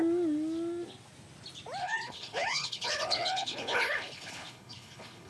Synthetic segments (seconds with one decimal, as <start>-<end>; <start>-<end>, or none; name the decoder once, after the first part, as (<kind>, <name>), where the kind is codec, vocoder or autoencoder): 1.8-5.3 (codec, HILCodec)